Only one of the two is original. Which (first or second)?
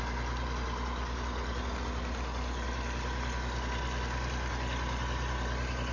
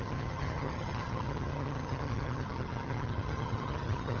first